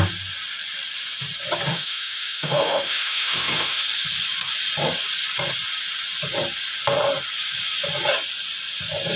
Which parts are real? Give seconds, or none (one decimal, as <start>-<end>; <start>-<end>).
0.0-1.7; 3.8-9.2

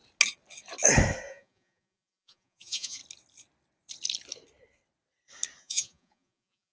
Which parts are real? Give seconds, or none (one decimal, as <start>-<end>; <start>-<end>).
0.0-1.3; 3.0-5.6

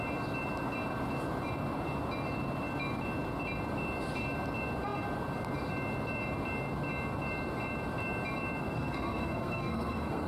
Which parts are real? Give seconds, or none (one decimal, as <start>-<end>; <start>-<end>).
0.0-8.6

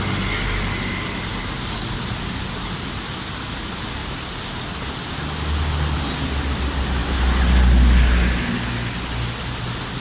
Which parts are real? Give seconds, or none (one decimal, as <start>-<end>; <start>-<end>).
0.0-10.0